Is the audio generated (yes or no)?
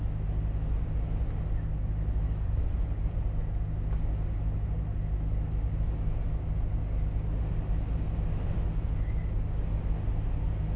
no